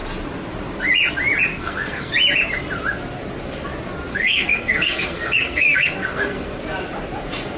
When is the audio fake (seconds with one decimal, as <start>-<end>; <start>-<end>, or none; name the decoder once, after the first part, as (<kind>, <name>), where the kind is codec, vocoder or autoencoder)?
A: 1.5-2.1 (codec, SNAC); 4.1-6.6